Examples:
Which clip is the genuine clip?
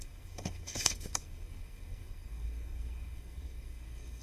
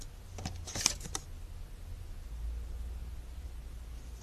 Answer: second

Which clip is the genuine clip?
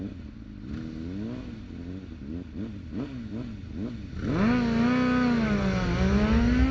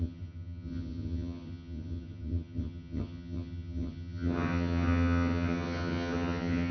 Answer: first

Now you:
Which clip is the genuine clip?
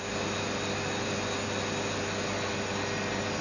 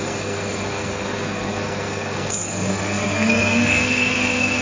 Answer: first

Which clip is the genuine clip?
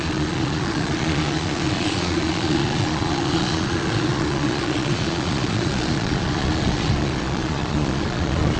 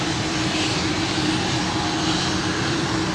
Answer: second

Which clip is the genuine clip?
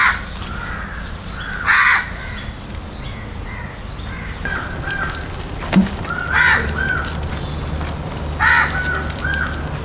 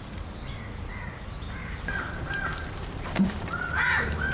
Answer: first